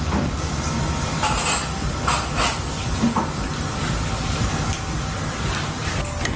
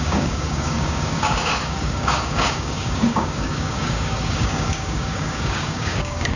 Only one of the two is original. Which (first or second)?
first